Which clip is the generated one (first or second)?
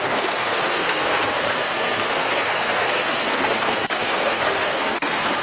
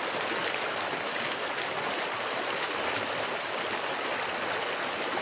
first